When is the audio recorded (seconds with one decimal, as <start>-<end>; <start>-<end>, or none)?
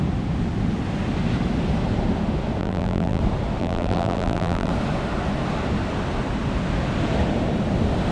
0.0-2.6; 3.2-3.6; 4.7-8.1